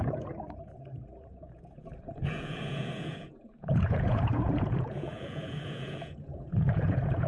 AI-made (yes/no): yes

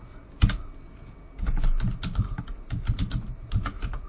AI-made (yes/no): no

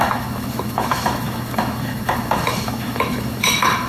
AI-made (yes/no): yes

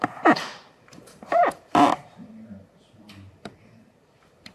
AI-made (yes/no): yes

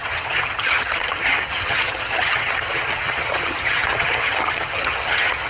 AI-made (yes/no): yes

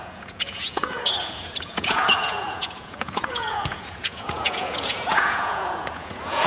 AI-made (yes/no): yes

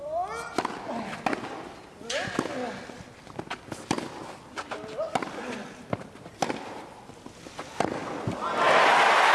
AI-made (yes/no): no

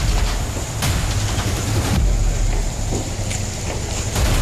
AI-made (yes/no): no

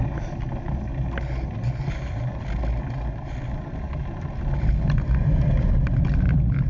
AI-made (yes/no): no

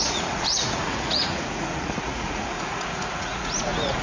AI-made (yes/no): yes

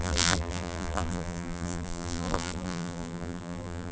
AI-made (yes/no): yes